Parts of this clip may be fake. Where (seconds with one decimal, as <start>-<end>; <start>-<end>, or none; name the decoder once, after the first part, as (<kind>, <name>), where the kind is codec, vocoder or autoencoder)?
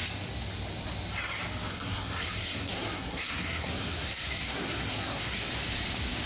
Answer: 1.7-5.5 (codec, SNAC)